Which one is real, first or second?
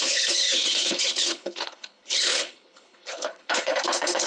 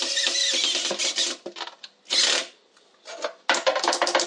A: second